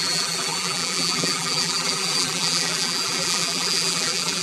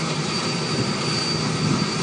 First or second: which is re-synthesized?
first